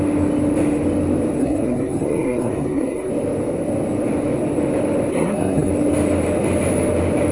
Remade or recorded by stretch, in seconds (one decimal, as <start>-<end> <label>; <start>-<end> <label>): 0.0-1.4 recorded; 1.4-3.1 remade; 3.1-5.1 recorded; 5.1-5.7 remade; 5.7-7.3 recorded